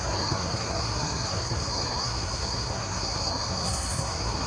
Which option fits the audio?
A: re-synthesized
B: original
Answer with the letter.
A